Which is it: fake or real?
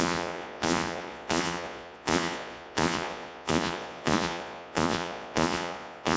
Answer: fake